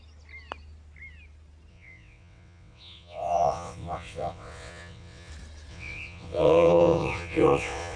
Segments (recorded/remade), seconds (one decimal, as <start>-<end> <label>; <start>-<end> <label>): 0.0-1.7 recorded; 1.7-5.3 remade; 5.3-5.7 recorded; 5.7-8.0 remade